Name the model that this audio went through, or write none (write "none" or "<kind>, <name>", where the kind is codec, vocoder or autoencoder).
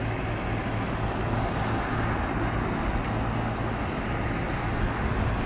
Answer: none